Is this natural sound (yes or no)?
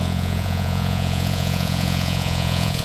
no